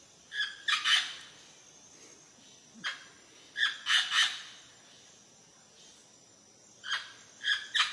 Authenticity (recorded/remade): recorded